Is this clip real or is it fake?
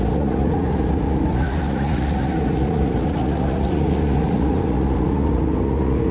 fake